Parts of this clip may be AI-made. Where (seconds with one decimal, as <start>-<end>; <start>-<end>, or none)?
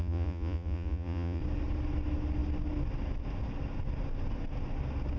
0.0-1.4